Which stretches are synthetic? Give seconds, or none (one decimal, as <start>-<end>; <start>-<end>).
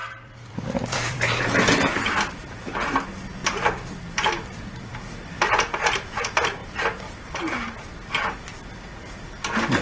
0.0-1.4; 3.4-4.6; 6.6-7.4